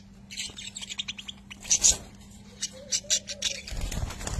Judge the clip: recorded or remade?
recorded